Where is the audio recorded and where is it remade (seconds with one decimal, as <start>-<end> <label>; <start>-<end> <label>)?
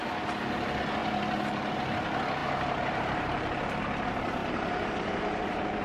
0.0-1.0 recorded; 1.0-1.7 remade; 1.7-2.4 recorded; 2.4-3.8 remade; 3.8-4.4 recorded; 4.4-5.8 remade